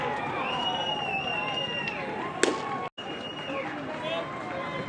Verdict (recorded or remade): recorded